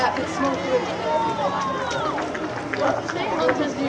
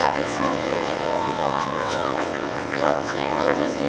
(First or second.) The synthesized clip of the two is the second